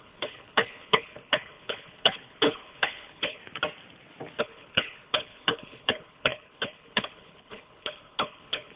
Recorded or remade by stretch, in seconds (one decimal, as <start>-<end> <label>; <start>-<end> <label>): 0.0-3.4 remade; 3.4-4.4 recorded; 4.4-8.8 remade